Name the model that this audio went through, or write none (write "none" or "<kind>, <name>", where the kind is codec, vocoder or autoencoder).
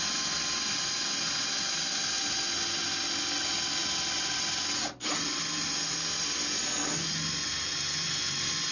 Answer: none